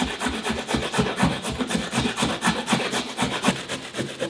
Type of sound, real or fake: real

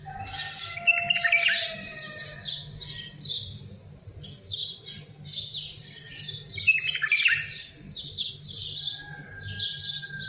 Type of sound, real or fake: real